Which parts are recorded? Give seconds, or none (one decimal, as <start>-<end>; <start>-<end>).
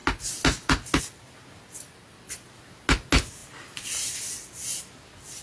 0.0-5.4